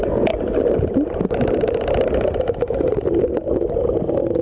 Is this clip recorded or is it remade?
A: recorded